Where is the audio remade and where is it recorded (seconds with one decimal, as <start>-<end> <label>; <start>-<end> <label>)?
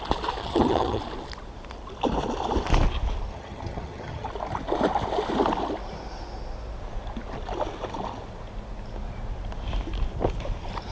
0.0-0.4 recorded; 0.4-1.0 remade; 1.0-3.3 recorded; 3.3-4.3 remade; 4.3-10.9 recorded